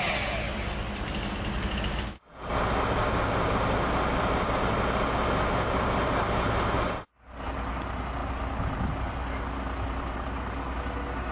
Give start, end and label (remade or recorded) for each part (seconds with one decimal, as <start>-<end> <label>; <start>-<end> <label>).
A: 0.0-11.3 recorded